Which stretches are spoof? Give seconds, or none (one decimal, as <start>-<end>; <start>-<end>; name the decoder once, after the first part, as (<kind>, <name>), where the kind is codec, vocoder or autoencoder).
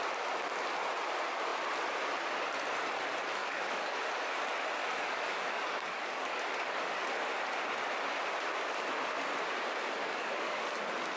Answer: 3.4-4.0 (codec, DAC); 4.8-7.2; 10.0-10.7